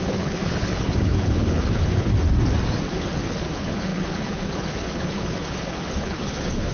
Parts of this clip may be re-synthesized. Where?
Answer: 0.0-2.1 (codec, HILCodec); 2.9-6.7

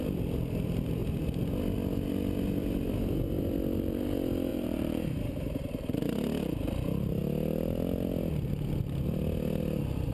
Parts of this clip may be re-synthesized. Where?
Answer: 4.5-6.2 (vocoder, BigVGAN v2)

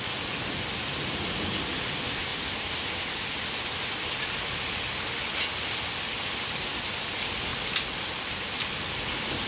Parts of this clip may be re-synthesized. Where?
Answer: none

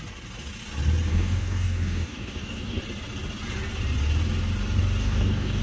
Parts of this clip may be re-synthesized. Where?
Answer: 1.1-2.8 (codec, DAC); 5.0-5.6

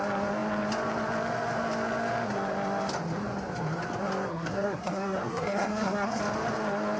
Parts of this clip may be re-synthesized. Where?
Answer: 4.3-6.2 (codec, SNAC)

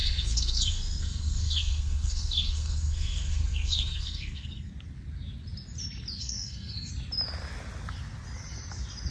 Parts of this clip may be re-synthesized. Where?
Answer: 0.0-4.7 (codec, SNAC); 6.2-6.9

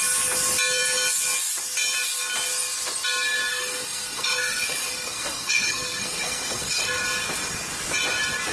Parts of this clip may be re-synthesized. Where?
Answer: 3.5-7.0 (codec, SNAC)

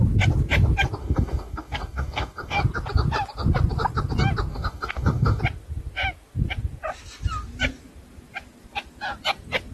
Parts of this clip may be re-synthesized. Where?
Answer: 1.0-2.6 (codec, DAC); 4.5-5.4